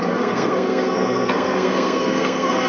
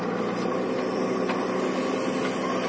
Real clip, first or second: second